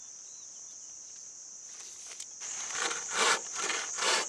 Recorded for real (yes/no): yes